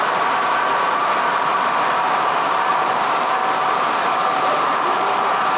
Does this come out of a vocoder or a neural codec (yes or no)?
yes